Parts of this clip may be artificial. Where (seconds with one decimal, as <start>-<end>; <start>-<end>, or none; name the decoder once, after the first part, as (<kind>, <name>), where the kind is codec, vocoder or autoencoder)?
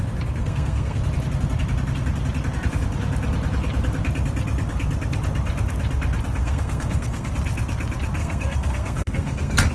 0.4-1.0 (codec, SNAC); 6.4-7.3; 8.2-9.7